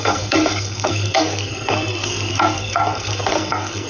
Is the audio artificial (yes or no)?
yes